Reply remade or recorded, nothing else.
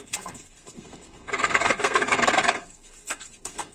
remade